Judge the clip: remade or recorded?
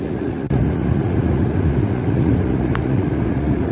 remade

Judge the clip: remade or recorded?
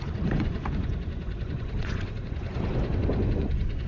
remade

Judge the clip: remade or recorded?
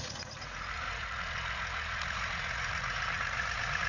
remade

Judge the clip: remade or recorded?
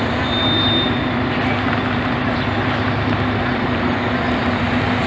recorded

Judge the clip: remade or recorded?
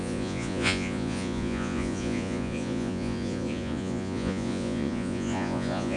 remade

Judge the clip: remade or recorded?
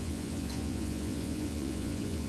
remade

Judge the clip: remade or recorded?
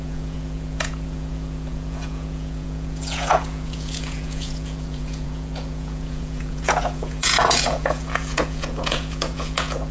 remade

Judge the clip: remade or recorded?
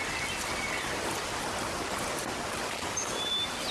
recorded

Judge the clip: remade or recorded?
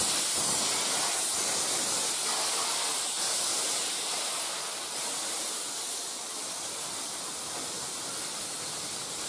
recorded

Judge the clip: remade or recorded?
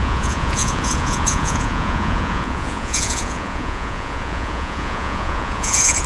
remade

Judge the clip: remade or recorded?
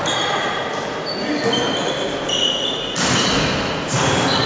recorded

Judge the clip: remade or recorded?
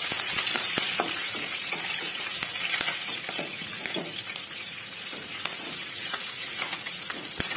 remade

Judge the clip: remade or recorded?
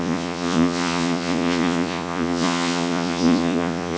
remade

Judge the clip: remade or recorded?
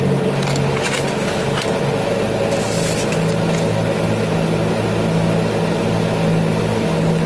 recorded